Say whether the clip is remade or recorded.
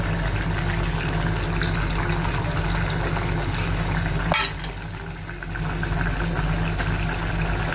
recorded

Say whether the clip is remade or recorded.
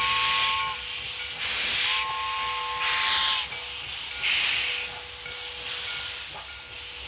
recorded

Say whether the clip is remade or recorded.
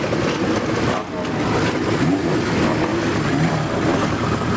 recorded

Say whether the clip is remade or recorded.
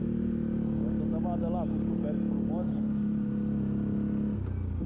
recorded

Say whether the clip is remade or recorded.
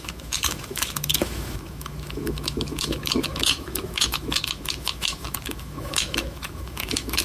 remade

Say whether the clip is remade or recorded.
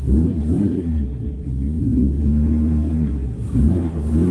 remade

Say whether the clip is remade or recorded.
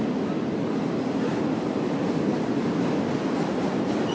recorded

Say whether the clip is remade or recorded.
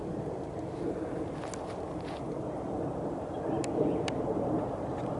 recorded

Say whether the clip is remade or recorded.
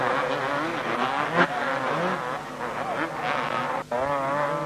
recorded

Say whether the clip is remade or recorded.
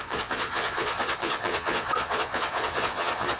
remade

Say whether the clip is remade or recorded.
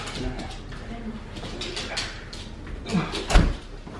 recorded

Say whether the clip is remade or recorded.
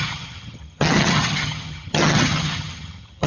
remade